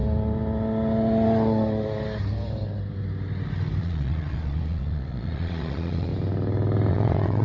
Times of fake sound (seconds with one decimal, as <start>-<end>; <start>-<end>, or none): 3.8-6.1; 6.9-7.4